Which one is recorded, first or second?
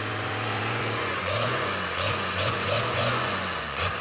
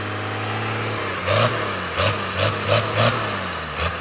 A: second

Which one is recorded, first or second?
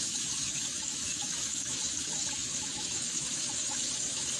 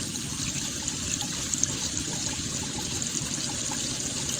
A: second